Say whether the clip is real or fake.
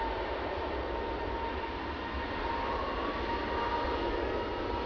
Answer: real